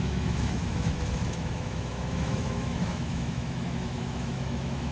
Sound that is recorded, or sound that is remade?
remade